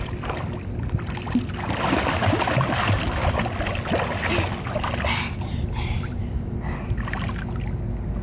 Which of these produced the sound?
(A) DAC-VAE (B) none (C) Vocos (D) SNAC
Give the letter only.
B